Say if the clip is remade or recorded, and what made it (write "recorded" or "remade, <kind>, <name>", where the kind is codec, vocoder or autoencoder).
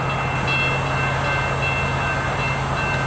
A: recorded